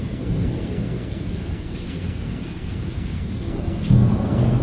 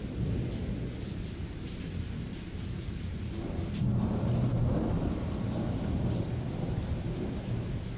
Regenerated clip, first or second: first